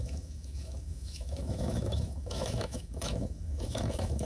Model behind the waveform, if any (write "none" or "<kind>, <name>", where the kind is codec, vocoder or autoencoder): autoencoder, DAC-VAE